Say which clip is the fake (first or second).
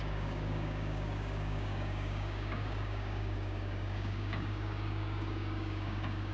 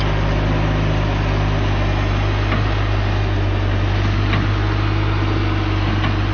first